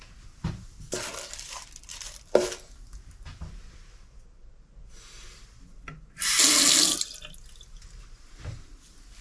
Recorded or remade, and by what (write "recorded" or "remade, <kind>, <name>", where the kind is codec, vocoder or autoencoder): recorded